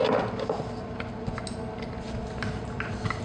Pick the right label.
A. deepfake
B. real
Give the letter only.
B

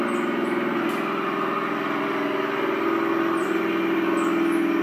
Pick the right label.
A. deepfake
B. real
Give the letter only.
B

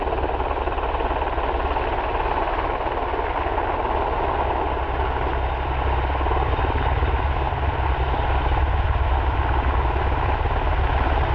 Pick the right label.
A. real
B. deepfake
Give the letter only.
A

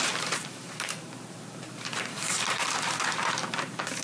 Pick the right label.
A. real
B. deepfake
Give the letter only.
B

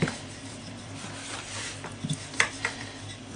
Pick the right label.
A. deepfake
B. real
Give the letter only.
A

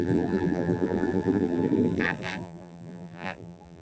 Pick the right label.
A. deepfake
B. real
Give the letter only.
A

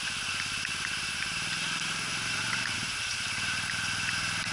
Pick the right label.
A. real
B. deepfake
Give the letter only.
B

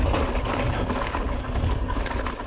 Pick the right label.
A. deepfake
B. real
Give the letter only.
B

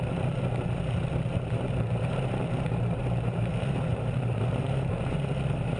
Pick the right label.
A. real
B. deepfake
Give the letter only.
B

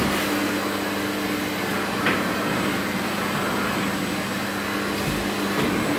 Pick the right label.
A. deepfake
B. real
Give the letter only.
B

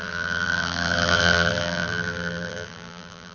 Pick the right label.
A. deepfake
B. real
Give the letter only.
A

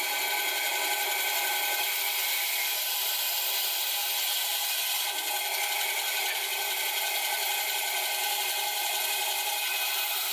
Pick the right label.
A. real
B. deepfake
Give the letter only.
A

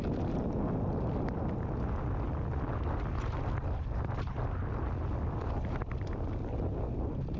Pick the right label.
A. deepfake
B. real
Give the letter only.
B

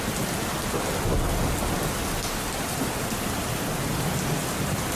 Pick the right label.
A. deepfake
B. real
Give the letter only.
B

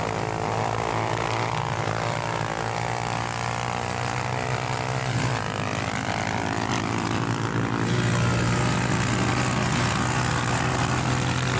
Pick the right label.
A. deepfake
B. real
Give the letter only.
B